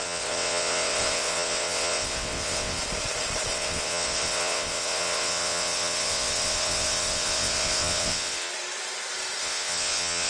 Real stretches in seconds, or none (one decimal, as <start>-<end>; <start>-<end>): 2.8-3.5; 8.5-9.4